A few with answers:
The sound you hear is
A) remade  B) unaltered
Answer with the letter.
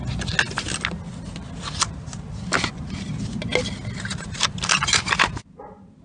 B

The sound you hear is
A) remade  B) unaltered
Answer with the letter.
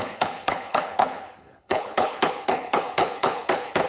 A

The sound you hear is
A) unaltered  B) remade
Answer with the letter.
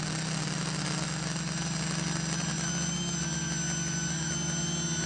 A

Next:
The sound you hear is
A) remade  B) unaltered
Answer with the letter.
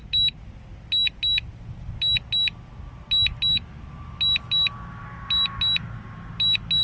B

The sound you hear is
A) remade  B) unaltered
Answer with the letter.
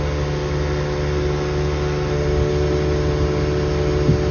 B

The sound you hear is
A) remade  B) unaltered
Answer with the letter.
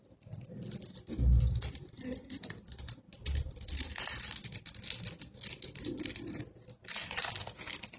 B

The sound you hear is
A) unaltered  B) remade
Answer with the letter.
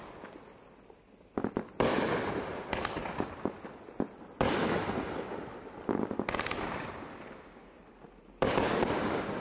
A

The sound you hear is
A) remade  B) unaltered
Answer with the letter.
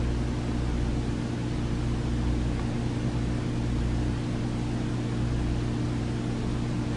B